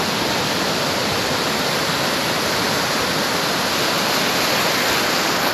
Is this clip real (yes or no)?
yes